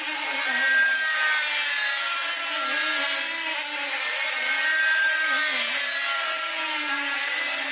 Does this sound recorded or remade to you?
recorded